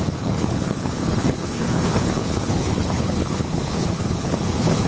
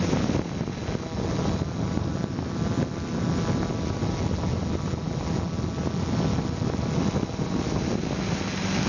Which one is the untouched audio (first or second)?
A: second